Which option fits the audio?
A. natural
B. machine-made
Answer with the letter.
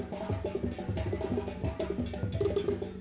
A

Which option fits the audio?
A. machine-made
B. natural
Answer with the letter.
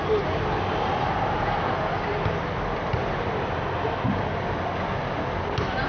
B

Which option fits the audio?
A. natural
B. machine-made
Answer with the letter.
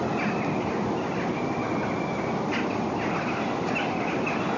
A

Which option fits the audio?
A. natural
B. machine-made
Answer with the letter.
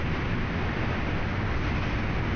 A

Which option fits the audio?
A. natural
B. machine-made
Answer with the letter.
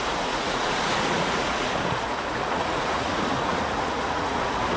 B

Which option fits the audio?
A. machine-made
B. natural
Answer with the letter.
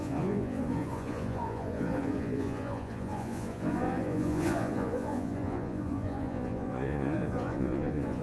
A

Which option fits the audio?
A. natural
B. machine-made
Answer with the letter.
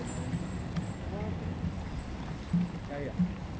A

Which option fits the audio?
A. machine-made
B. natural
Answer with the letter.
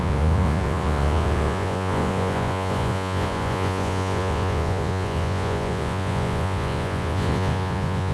A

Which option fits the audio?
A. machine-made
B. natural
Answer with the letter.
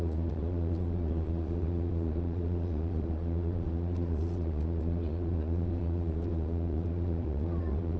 A